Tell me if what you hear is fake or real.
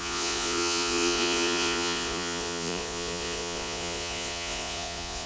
fake